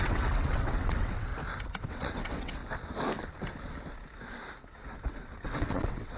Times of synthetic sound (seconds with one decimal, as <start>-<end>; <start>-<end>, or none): 0.0-1.3; 1.9-2.6; 5.1-6.2